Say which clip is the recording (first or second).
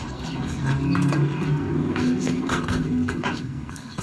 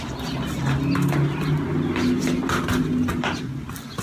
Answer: second